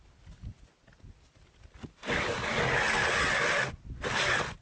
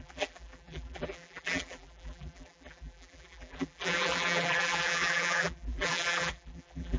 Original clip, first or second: first